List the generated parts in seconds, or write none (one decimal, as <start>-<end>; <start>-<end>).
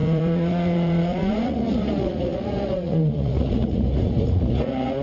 0.0-5.0